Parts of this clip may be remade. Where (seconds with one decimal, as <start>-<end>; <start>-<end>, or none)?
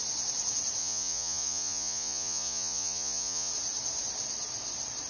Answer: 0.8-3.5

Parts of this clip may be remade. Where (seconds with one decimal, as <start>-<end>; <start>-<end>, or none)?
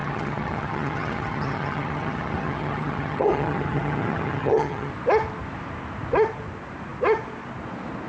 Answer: 0.0-4.9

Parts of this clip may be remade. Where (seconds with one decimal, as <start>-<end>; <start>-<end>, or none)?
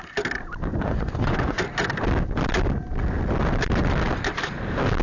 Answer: 0.7-1.6